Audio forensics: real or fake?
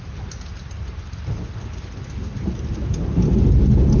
real